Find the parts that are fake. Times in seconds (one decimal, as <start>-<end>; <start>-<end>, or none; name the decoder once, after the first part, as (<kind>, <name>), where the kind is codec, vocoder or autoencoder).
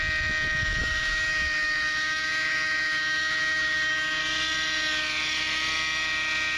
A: 0.8-4.2 (autoencoder, DAC-VAE)